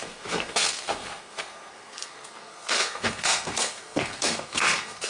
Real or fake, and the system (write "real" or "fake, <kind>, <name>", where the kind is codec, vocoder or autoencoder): fake, codec, SNAC